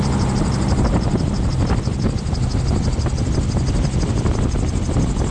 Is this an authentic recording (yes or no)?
yes